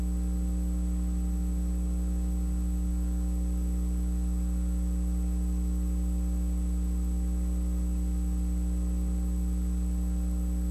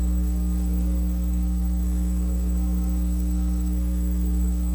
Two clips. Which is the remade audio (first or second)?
second